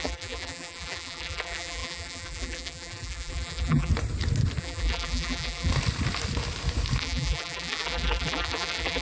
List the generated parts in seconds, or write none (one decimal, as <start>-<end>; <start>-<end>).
0.0-3.9; 4.6-5.7; 7.0-9.0